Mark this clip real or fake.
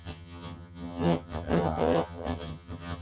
fake